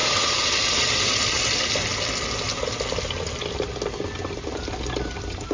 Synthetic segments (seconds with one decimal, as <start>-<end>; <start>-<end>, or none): none

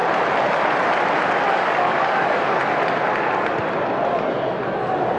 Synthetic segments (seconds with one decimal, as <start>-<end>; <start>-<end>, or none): 1.5-2.6